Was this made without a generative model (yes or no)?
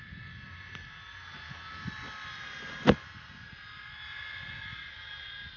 yes